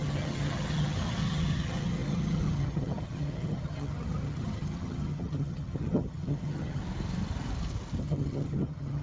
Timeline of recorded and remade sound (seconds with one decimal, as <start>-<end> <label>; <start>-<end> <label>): 0.0-6.8 remade; 6.8-8.0 recorded; 8.0-9.0 remade